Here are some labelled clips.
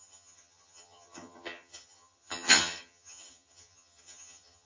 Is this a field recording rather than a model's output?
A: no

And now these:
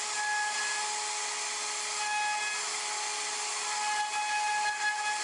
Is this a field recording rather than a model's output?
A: yes